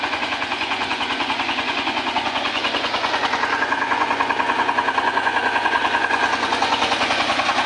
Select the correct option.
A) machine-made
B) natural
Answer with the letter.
A